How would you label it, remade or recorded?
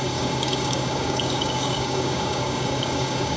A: remade